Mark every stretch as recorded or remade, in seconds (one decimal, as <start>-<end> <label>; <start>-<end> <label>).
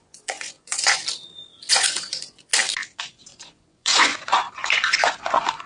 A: 0.0-1.0 remade; 1.0-1.7 recorded; 1.7-2.5 remade; 2.5-3.0 recorded; 3.0-5.7 remade